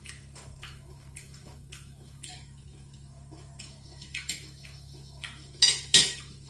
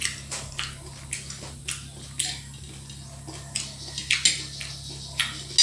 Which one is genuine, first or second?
second